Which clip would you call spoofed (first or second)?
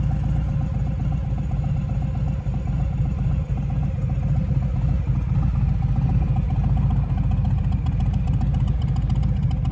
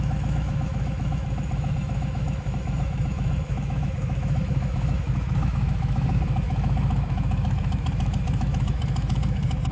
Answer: second